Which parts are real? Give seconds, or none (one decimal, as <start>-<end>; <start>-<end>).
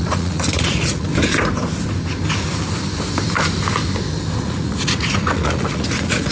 1.1-4.4